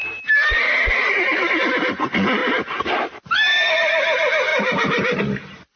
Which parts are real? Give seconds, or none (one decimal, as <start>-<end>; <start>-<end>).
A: 1.9-2.4; 3.2-4.5; 5.2-5.8